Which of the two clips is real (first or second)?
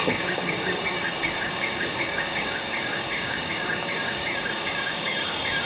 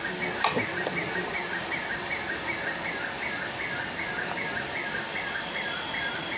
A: second